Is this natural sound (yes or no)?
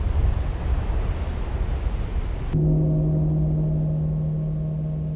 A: yes